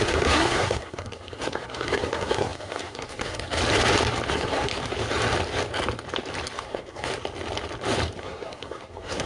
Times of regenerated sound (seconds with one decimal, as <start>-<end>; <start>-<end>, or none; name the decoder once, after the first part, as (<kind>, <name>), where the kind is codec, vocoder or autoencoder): 0.0-3.6 (codec, SNAC); 4.3-4.7; 6.6-7.1; 8.2-9.3